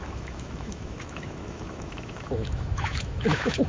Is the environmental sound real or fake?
fake